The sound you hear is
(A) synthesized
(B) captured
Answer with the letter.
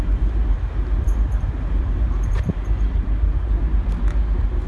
A